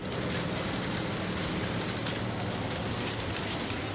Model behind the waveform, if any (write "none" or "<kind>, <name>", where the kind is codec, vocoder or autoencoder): none